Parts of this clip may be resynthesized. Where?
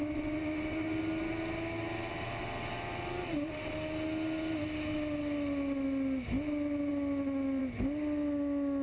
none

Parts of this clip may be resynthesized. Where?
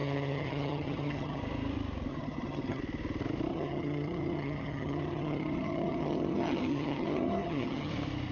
0.0-1.4; 2.1-2.8; 3.5-7.9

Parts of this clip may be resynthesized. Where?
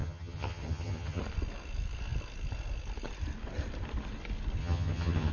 0.0-1.2; 4.6-5.3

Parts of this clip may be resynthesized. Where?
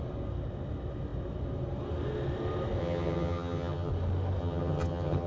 2.8-3.9; 4.4-5.3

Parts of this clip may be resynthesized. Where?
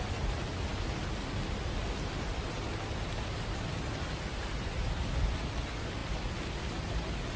none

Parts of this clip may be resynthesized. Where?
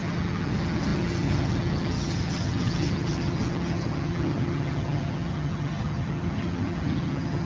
0.0-7.5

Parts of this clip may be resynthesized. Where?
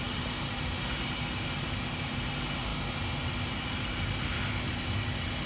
none